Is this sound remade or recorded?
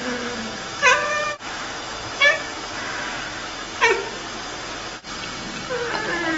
recorded